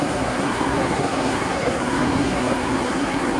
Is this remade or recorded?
remade